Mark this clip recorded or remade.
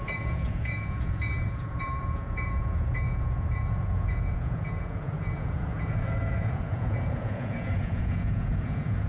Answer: remade